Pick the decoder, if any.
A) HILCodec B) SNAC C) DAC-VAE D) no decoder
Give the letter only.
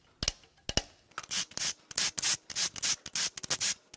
D